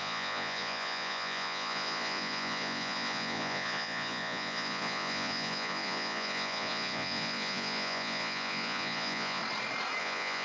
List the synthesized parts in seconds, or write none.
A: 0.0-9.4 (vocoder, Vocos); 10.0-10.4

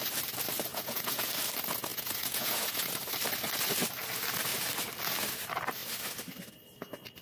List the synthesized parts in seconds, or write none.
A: 0.7-1.3 (vocoder, Vocos); 1.9-2.9